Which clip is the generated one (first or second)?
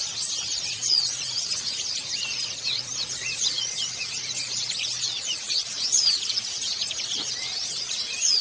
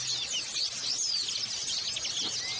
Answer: first